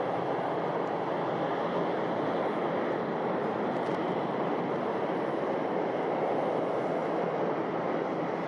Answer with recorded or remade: recorded